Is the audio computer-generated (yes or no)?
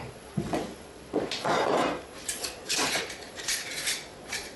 yes